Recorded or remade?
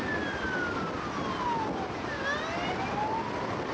recorded